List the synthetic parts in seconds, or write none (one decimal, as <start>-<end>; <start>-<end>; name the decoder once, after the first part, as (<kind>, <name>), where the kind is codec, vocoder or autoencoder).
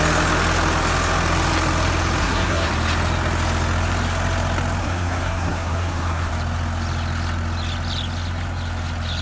2.2-2.7 (codec, SNAC); 4.8-6.3